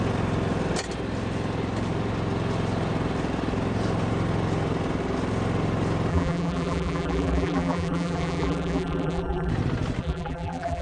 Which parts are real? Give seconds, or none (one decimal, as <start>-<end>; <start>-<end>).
0.0-6.1; 9.5-10.0